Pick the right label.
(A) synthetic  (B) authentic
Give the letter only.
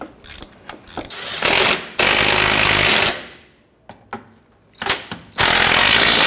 B